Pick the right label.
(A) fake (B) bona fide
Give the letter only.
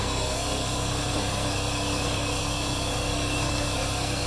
A